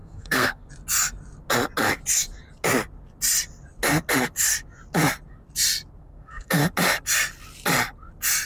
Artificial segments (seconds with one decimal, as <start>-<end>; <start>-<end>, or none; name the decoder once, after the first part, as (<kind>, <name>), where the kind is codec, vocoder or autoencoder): 0.0-0.7 (codec, SNAC); 6.0-6.6